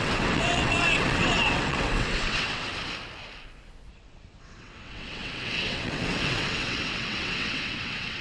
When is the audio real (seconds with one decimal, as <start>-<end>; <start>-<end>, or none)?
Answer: 2.7-3.9